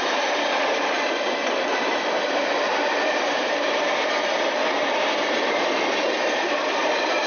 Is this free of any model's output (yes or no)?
no